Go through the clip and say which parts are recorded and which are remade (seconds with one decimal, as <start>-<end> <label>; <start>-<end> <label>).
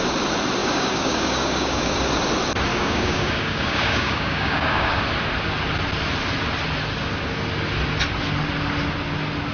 0.0-0.6 recorded; 0.6-2.0 remade; 2.0-2.7 recorded; 2.7-5.0 remade; 5.0-9.5 recorded